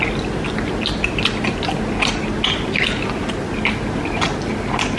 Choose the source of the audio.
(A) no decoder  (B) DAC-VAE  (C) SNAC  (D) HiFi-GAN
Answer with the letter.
A